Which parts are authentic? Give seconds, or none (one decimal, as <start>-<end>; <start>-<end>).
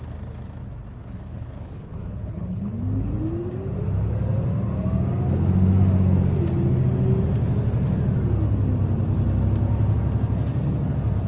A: 0.0-1.0; 2.7-11.3